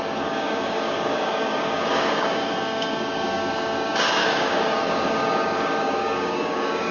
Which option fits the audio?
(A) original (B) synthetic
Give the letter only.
B